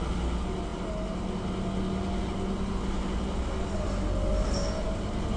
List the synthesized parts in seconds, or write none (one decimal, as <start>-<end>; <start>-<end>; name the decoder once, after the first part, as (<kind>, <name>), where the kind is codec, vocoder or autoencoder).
none